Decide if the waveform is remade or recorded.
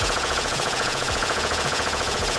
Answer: remade